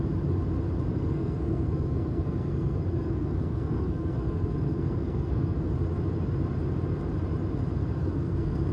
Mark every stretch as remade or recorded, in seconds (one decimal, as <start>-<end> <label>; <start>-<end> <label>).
0.0-0.9 recorded; 0.9-5.7 remade; 5.7-8.0 recorded; 8.0-8.7 remade